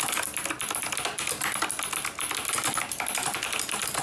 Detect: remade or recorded recorded